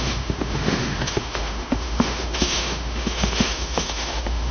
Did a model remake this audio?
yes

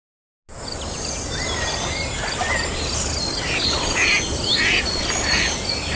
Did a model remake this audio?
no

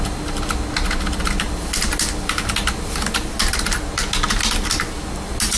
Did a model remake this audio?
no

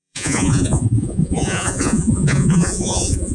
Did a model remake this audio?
yes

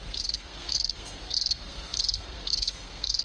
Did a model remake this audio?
yes